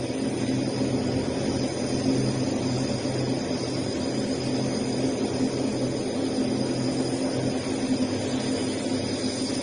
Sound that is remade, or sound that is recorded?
recorded